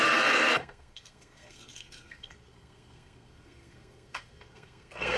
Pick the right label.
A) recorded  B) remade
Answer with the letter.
B